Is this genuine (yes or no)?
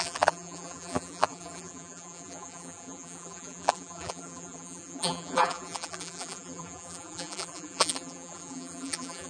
no